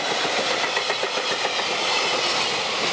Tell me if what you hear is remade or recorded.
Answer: recorded